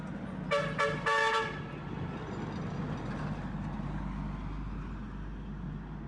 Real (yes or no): yes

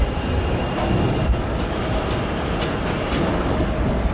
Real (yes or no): yes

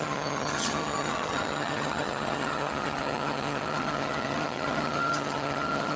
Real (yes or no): no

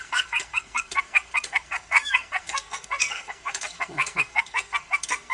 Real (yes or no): no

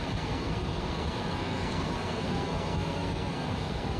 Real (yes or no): no